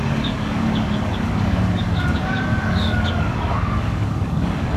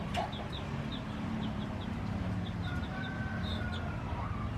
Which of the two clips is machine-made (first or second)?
first